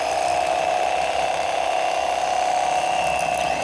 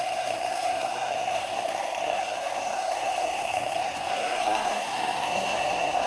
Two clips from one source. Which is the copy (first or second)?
second